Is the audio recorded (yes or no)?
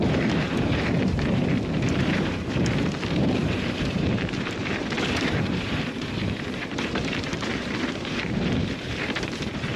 no